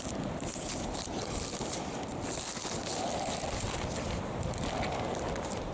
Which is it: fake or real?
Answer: real